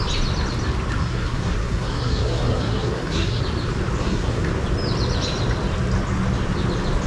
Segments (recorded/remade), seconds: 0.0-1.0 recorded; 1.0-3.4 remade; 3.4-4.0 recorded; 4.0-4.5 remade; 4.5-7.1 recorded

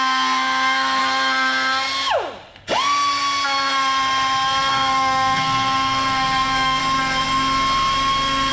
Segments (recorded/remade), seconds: 0.0-1.0 remade; 1.0-4.7 recorded; 4.7-6.8 remade; 6.8-8.5 recorded